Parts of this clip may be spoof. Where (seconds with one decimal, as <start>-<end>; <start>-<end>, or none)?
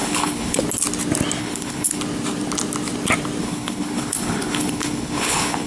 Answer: 0.0-0.6; 1.4-2.0; 3.4-5.7